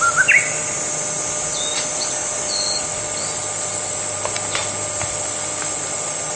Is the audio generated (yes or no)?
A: no